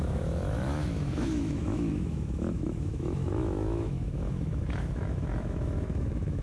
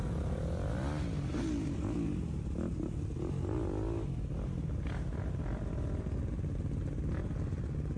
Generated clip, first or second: first